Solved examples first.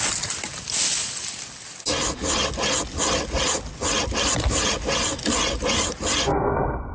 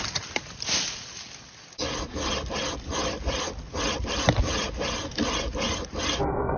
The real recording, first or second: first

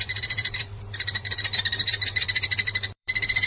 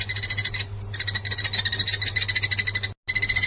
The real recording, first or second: second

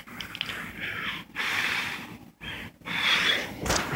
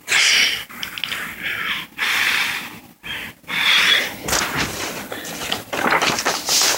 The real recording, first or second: second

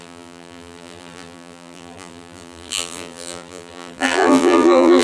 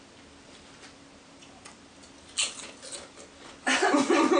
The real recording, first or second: second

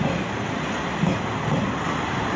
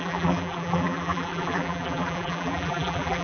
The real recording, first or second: first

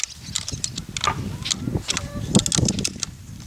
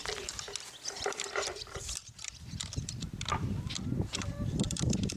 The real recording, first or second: first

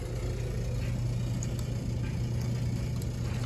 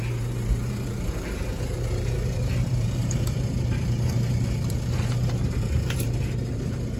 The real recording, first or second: first